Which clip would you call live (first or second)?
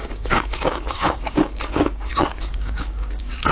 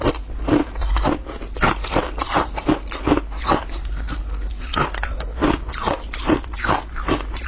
second